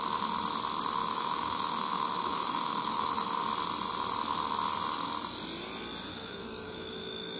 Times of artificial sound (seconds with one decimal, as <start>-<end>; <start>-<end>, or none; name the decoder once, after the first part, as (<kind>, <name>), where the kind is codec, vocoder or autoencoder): 1.0-3.4 (autoencoder, DAC-VAE); 6.1-7.4